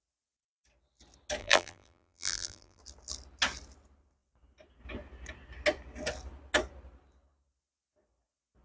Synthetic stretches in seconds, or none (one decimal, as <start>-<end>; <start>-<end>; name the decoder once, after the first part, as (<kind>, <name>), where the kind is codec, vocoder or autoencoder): 1.4-2.8 (vocoder, BigVGAN v2)